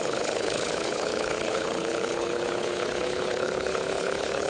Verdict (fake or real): fake